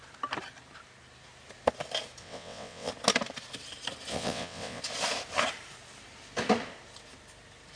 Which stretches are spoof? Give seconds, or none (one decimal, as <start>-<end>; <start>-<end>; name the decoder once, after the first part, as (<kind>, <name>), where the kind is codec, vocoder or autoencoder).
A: 2.2-2.9 (vocoder, WaveNeXt); 4.1-4.8